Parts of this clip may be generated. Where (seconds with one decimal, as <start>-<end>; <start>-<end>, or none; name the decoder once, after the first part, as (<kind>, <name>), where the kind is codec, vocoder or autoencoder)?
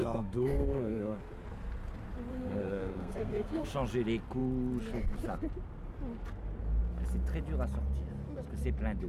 0.0-1.2 (codec, SNAC); 2.3-3.7